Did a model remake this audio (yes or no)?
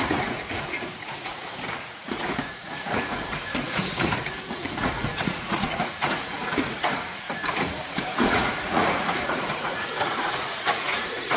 yes